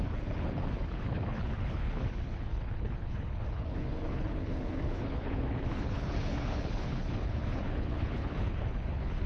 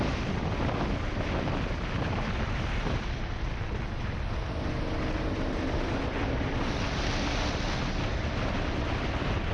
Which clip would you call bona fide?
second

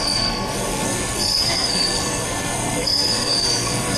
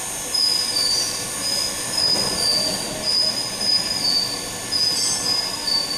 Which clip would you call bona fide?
second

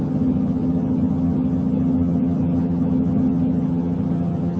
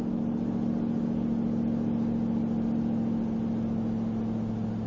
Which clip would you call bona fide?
second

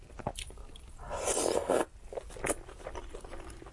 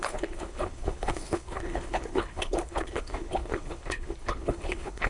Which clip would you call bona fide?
first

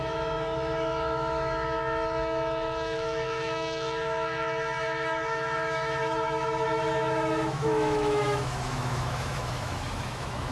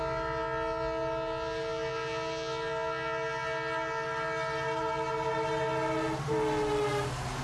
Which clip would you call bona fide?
second